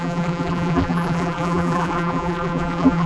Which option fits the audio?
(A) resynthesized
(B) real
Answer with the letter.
A